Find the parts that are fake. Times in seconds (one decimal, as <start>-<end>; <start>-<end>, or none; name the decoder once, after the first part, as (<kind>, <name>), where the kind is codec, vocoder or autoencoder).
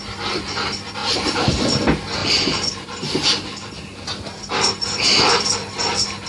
1.0-1.6 (vocoder, BigVGAN v2); 2.2-3.7